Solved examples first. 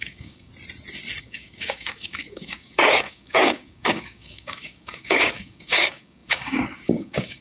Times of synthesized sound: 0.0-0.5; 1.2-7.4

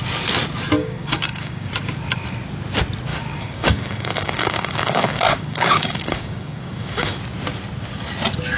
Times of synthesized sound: 0.8-1.7; 3.1-7.2

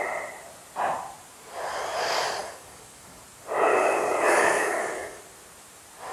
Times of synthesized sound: 2.4-3.2; 3.7-5.2

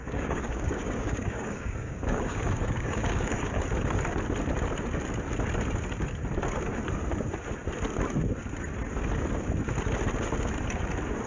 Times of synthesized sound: 0.0-3.6